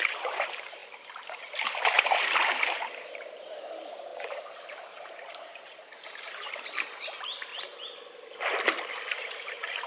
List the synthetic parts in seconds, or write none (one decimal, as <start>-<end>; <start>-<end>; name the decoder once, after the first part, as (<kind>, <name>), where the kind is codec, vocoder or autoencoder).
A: 0.0-7.5 (vocoder, BigVGAN v2); 9.1-9.9